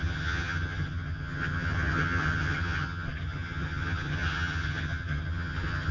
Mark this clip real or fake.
fake